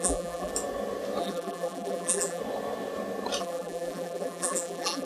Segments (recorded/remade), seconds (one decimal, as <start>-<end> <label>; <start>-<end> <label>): 0.0-0.5 remade; 0.5-1.2 recorded; 1.2-2.4 remade; 2.4-3.4 recorded; 3.4-5.1 remade